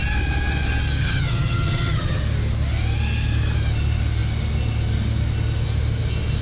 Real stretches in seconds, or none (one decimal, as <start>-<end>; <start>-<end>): 0.0-1.0; 2.2-6.4